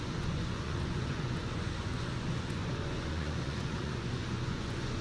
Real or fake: fake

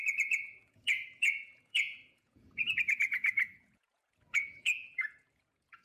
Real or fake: fake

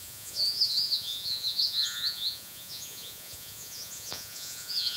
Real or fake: fake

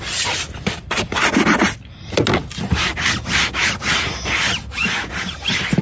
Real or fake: real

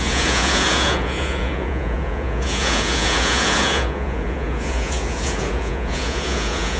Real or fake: fake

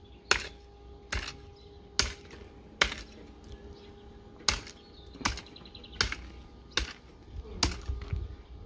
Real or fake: real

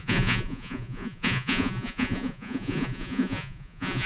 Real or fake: fake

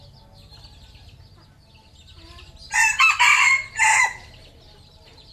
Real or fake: real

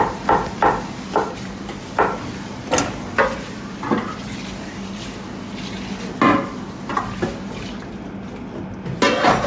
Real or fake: real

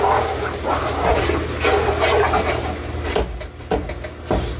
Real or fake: real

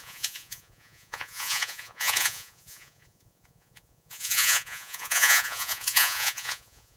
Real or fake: fake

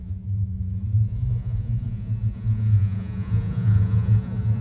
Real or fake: fake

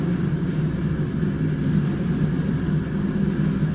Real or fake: real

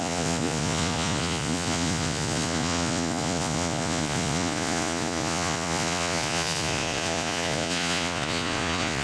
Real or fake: fake